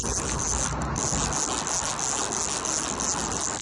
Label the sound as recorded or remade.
recorded